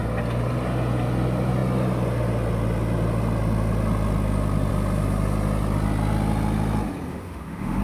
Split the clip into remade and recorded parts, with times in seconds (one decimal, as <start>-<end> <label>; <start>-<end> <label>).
0.0-7.1 recorded; 7.1-7.8 remade